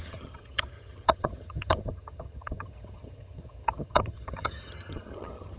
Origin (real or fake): fake